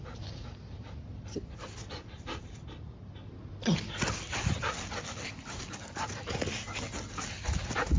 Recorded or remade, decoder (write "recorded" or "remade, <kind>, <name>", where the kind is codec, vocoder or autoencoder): recorded